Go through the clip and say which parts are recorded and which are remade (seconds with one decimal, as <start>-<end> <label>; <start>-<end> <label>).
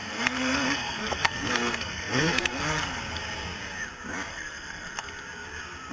0.0-3.0 remade; 3.0-4.3 recorded; 4.3-5.1 remade; 5.1-5.9 recorded